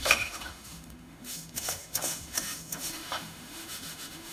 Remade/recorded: remade